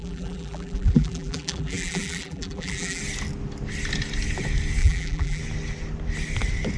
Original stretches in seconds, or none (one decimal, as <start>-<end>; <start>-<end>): 3.0-4.8; 5.4-6.8

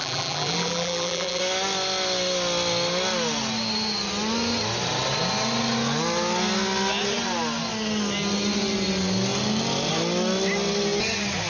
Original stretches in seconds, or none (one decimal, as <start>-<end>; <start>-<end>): 1.4-11.5

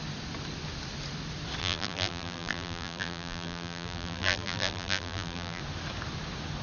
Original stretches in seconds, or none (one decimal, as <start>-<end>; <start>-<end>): 0.0-1.6; 5.6-6.6

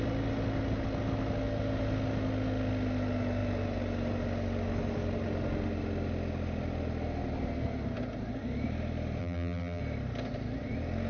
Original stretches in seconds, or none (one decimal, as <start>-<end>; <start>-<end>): 0.0-9.2; 9.8-11.1